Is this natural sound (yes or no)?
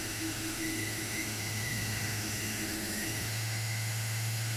no